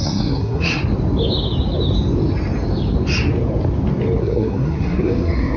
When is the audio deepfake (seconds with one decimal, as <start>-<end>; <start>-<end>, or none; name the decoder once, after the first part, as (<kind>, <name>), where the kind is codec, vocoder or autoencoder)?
0.0-0.8 (codec, SNAC); 4.2-5.6